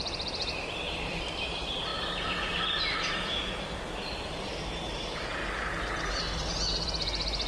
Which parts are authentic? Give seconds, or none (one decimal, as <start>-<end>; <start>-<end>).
1.9-3.1; 5.4-6.1